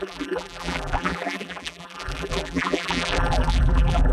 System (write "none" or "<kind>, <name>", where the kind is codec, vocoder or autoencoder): vocoder, BigVGAN v2